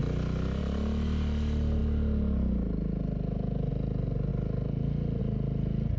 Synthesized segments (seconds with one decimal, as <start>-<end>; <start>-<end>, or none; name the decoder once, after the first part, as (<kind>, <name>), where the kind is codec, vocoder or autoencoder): none